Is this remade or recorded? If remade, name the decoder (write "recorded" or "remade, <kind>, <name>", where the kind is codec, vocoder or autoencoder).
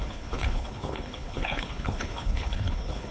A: remade, codec, HILCodec